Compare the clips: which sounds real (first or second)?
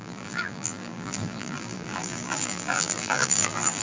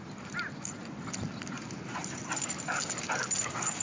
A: second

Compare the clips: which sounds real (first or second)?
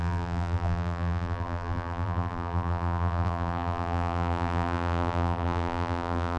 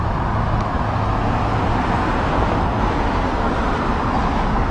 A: second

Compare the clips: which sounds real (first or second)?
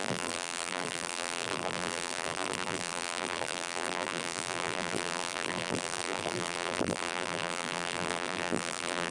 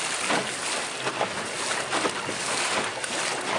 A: second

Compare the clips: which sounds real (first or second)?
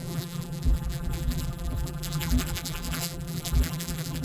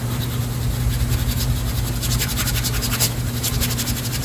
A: second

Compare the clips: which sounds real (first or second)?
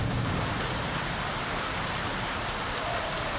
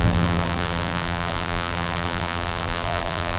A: first